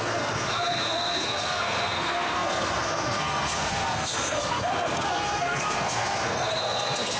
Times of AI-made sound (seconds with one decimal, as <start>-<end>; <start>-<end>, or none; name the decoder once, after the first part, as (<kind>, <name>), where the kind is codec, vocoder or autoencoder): 0.0-7.2 (codec, SNAC)